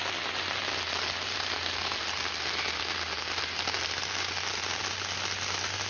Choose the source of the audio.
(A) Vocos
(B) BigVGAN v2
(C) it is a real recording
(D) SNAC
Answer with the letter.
C